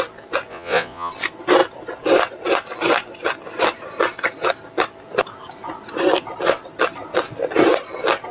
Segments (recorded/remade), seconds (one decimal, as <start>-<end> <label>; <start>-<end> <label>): 0.0-0.5 recorded; 0.5-1.1 remade; 1.1-8.3 recorded